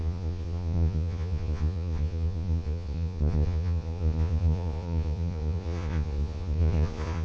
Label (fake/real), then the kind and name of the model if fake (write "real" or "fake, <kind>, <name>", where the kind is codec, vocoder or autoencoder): fake, vocoder, Vocos